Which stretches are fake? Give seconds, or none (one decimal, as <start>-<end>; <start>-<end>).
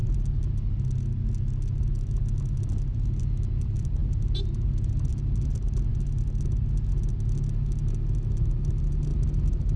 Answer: none